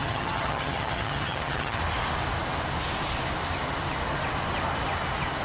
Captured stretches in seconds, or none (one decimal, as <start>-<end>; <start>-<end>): 1.8-5.4